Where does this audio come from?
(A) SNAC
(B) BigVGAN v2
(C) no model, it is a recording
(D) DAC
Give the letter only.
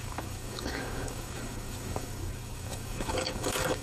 D